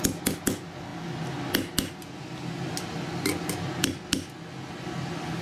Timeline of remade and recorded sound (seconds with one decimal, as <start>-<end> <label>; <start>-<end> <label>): 0.0-5.4 recorded